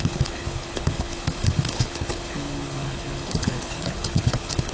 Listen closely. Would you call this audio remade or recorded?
remade